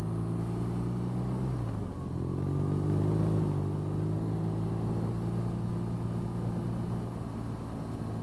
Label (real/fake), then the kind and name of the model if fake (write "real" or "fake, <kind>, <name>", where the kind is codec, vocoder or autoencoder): real